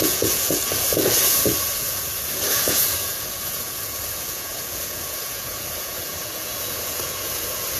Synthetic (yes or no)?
yes